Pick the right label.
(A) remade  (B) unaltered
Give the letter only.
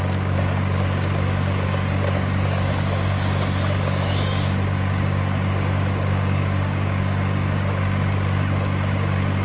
A